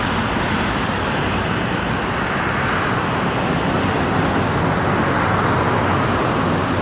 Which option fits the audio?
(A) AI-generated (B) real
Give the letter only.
B